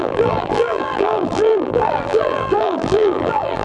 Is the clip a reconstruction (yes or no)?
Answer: yes